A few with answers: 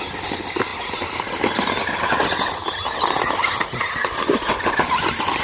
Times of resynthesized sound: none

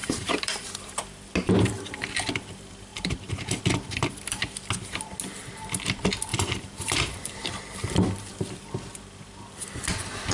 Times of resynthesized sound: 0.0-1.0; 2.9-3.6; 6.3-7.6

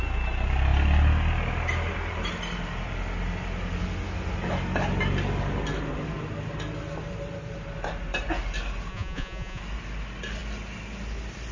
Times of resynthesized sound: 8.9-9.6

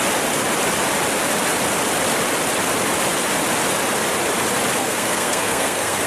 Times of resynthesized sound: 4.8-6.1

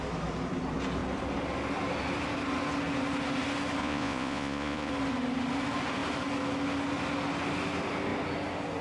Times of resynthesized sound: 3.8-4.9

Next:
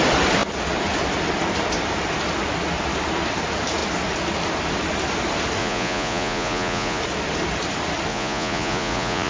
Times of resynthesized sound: 5.6-7.0; 8.1-9.3

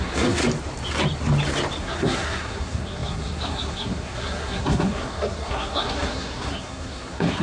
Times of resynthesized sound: 0.0-0.4; 1.8-7.4

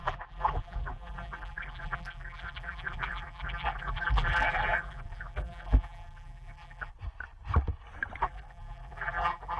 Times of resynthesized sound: 0.0-6.9; 8.2-9.6